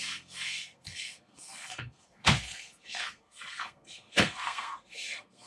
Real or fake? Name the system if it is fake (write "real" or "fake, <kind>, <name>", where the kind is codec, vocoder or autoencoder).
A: fake, codec, SNAC